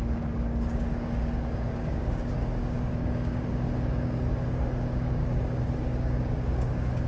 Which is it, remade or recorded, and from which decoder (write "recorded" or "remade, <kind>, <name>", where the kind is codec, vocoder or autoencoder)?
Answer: remade, codec, DAC